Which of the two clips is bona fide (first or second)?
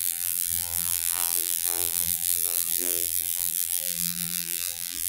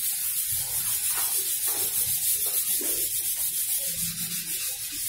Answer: second